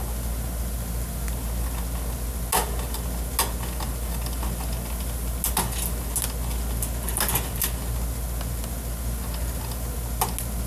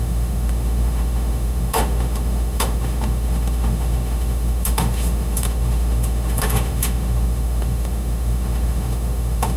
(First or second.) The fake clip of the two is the second